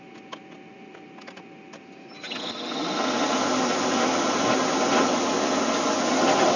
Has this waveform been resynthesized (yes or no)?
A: no